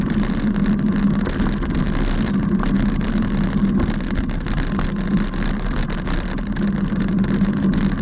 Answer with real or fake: real